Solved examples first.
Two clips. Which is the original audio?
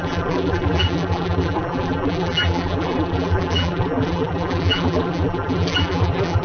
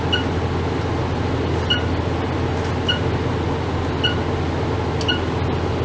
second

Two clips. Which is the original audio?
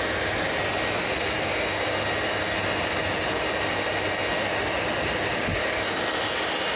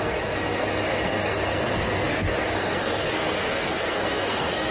first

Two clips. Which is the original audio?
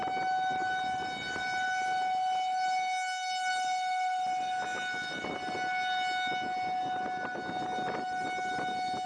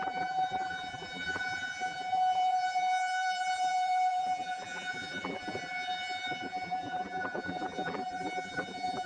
first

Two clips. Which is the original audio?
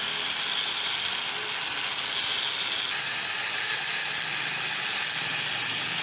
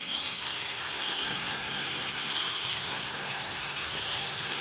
first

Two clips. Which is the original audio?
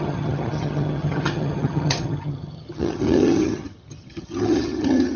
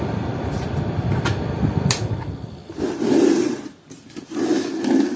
second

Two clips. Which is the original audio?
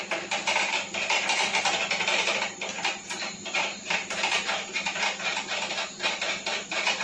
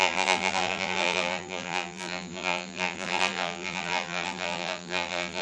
first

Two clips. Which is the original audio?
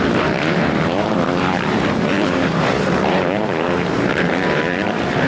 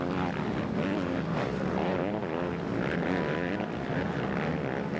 second